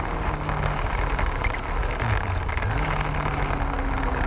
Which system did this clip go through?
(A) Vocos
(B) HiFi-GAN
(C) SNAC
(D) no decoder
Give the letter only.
D